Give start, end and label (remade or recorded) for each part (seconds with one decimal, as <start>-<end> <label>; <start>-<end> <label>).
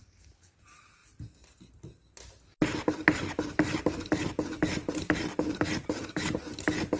0.0-7.0 recorded